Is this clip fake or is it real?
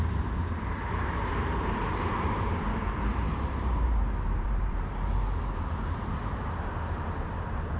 fake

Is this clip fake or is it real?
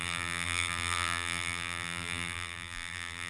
fake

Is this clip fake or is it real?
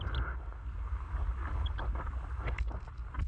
real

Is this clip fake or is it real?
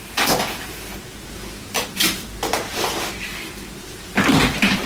real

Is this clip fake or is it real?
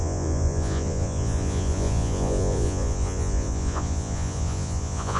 fake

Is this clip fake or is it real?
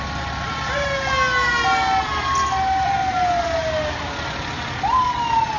real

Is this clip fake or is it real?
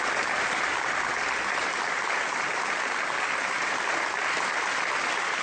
real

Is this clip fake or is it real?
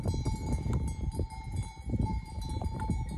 real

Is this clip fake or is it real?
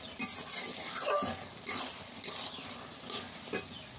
real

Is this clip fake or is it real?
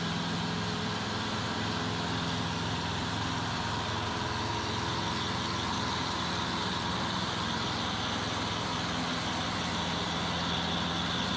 real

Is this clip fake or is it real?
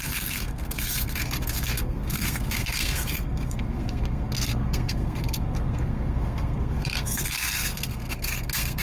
fake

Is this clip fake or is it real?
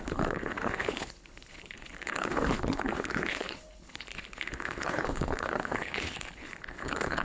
fake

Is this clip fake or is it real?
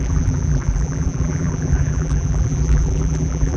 fake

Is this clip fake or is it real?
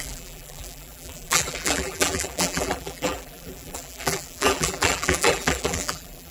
fake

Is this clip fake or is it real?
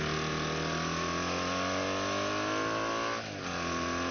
real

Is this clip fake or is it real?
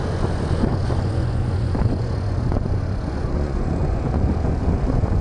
fake